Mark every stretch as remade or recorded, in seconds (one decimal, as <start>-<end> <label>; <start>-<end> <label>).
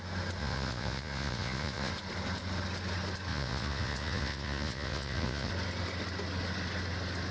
0.0-0.4 recorded; 0.4-1.9 remade; 1.9-3.3 recorded; 3.3-5.5 remade; 5.5-7.3 recorded